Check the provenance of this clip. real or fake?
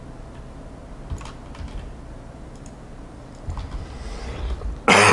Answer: real